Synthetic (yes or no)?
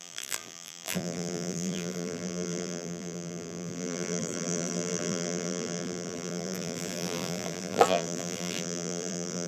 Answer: yes